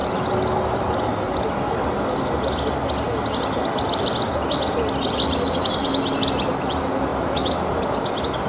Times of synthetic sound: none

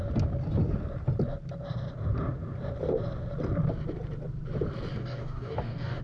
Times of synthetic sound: 4.9-6.0

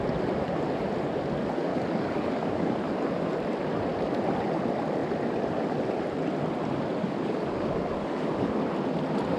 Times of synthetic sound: 1.7-2.8; 7.0-8.7

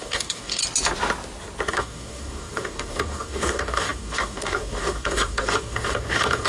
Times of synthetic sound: 0.0-0.6; 1.7-6.5